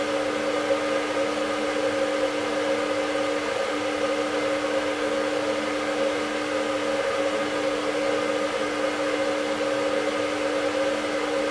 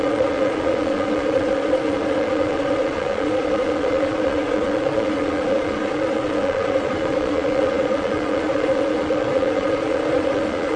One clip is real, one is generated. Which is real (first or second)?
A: first